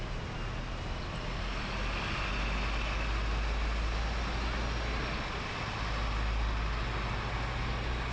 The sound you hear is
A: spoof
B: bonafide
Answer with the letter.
B